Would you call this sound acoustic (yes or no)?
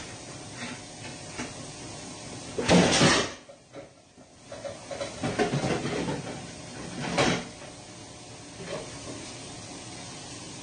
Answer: yes